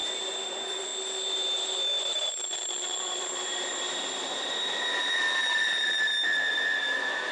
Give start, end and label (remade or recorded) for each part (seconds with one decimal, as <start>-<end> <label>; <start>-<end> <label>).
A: 0.0-0.5 recorded; 0.5-0.9 remade; 0.9-2.0 recorded; 2.0-3.3 remade; 3.3-5.0 recorded; 5.0-7.3 remade